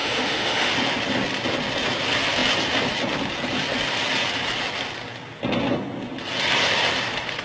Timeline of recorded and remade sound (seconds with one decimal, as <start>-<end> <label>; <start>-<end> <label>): 0.0-0.7 remade; 0.7-7.4 recorded